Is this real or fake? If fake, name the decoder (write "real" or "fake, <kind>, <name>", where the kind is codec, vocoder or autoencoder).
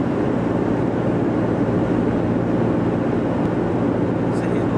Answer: real